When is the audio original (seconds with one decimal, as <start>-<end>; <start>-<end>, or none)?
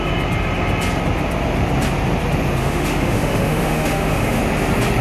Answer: 0.0-2.6; 4.4-5.0